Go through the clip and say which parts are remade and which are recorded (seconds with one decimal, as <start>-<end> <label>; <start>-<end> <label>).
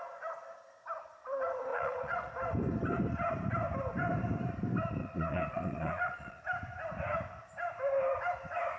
0.0-1.7 recorded; 1.7-2.3 remade; 2.3-5.0 recorded; 5.0-6.4 remade; 6.4-8.8 recorded